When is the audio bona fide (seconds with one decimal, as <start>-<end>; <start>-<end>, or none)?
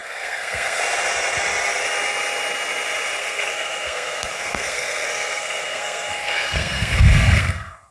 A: 0.8-3.2